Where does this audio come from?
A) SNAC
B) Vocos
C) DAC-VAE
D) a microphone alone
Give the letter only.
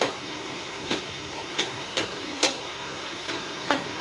A